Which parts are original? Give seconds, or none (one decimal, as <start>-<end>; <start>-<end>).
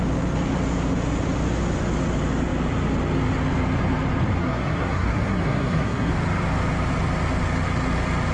0.0-4.4; 6.1-8.3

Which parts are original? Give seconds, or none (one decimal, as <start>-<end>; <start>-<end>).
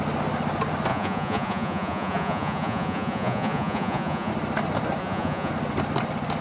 0.0-0.9; 4.3-5.0; 5.5-6.4